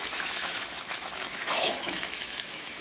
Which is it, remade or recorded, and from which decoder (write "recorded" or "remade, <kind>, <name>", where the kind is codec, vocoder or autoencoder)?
remade, autoencoder, DAC-VAE